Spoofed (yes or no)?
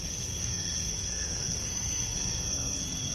yes